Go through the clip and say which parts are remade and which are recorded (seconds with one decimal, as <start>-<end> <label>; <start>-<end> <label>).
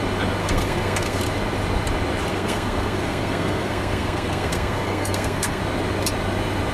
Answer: 0.0-0.4 recorded; 0.4-1.2 remade; 1.2-2.3 recorded; 2.3-5.6 remade; 5.6-6.7 recorded